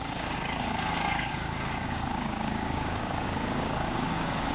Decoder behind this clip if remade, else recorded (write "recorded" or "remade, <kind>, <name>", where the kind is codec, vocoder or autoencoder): remade, codec, DAC